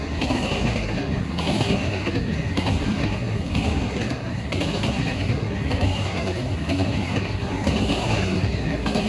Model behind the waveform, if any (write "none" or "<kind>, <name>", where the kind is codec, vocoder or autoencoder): codec, SNAC